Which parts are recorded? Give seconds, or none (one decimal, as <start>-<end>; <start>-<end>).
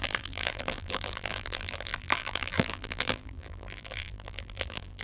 none